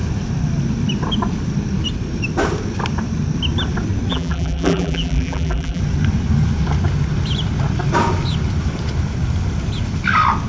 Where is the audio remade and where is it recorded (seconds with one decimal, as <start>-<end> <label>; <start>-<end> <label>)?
0.0-4.1 recorded; 4.1-5.8 remade; 5.8-10.5 recorded